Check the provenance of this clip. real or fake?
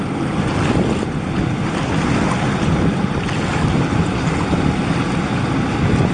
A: real